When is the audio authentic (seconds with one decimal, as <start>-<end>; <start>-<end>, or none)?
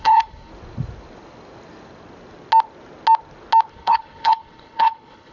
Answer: 0.5-3.7